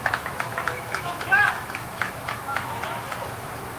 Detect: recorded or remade remade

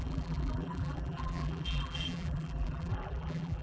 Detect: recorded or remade remade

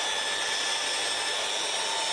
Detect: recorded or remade recorded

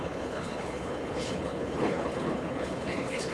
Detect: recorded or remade remade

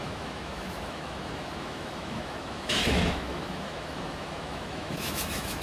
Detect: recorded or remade remade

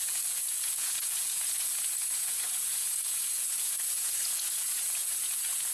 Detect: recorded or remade remade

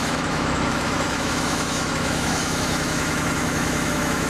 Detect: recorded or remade remade